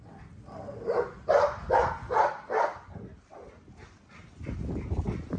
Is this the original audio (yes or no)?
yes